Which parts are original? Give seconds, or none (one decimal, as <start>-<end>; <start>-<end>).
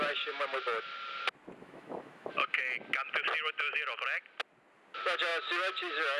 0.0-1.6; 2.6-6.2